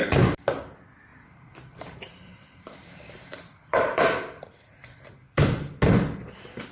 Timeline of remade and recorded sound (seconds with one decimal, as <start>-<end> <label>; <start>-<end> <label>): 0.0-1.1 recorded; 1.1-5.1 remade; 5.1-6.7 recorded